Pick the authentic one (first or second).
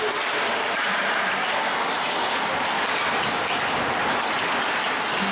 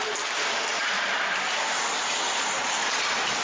first